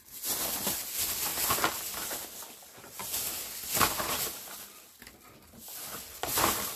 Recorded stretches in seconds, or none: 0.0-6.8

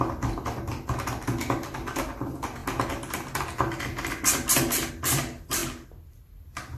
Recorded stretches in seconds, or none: 0.0-6.8

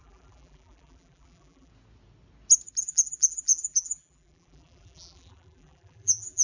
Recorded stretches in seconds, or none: 1.7-2.8

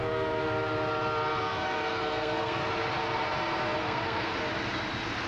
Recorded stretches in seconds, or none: 0.4-1.4; 2.6-3.8; 4.3-5.3